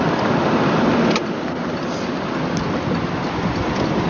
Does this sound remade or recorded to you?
recorded